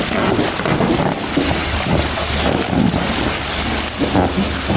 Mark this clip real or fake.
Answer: real